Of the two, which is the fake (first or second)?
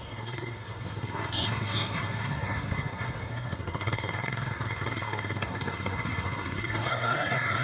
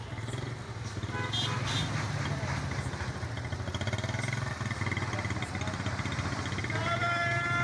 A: first